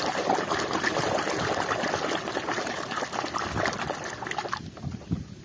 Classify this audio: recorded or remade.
recorded